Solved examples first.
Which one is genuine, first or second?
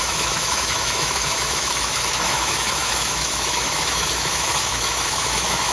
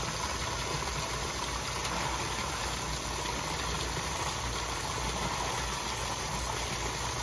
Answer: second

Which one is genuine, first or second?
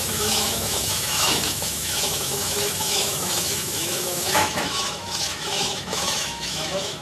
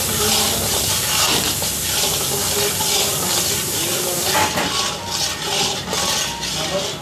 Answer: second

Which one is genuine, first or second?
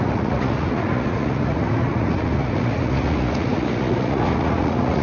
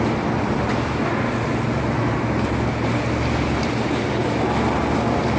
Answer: second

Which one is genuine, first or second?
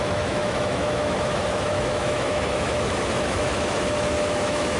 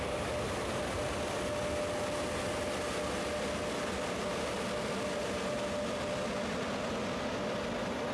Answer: second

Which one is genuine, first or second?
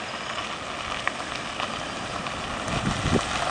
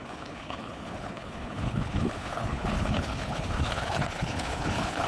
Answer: first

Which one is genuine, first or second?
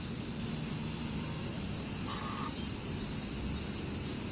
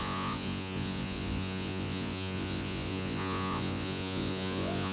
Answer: first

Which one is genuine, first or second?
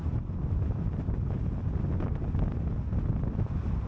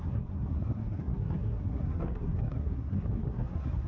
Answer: first